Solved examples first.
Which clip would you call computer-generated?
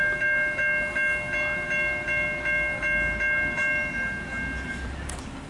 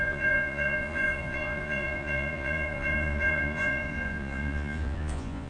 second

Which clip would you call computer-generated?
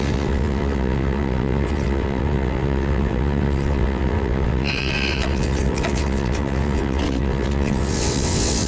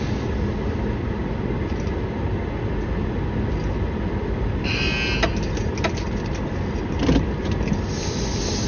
first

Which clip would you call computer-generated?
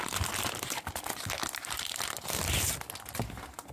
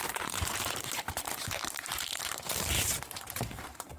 second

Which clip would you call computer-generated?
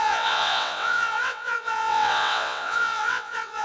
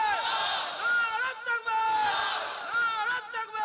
first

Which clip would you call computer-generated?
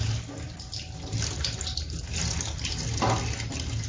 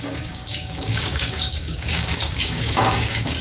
second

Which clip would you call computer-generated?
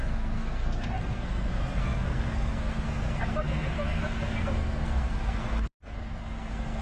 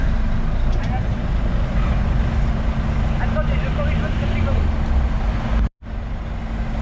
first